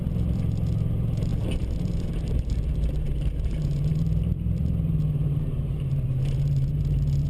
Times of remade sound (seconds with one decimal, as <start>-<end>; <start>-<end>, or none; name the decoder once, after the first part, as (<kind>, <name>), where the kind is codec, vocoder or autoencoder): 0.0-7.3 (vocoder, BigVGAN v2)